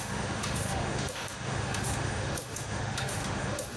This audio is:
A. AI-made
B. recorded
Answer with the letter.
A